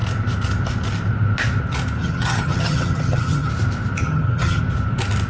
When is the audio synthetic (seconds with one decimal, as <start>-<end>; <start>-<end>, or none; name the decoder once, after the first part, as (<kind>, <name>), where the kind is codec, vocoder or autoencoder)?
2.0-3.5 (vocoder, HiFi-GAN); 4.0-4.6